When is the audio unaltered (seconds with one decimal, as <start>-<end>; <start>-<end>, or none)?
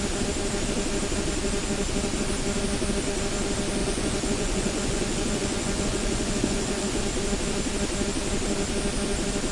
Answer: 0.0-3.8; 7.0-9.5